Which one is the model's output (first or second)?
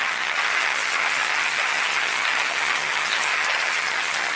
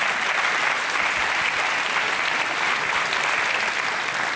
first